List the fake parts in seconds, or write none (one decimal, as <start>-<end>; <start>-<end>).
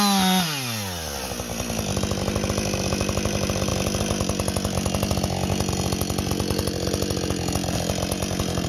none